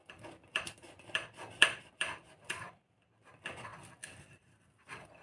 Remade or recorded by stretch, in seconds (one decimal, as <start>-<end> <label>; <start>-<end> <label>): 0.0-3.7 remade; 3.7-4.7 recorded; 4.7-5.2 remade